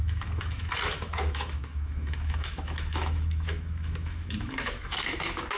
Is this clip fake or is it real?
fake